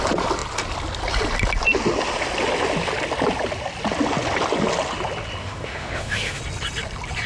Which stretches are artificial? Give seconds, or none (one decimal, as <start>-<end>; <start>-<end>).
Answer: 5.4-6.4